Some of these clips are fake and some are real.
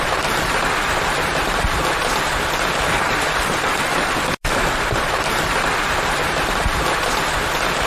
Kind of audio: real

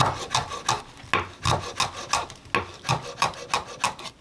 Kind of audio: real